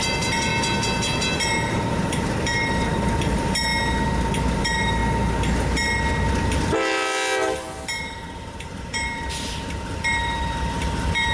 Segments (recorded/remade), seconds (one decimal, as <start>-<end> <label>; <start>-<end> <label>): 0.0-0.5 remade; 0.5-1.7 recorded; 1.7-3.7 remade; 3.7-4.6 recorded; 4.6-5.0 remade; 5.0-8.0 recorded; 8.0-11.3 remade